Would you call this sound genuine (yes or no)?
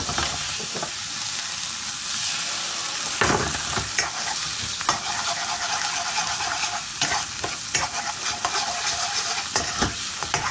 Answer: yes